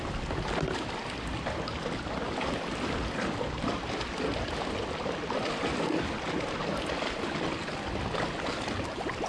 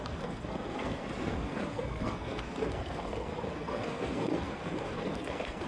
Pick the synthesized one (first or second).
second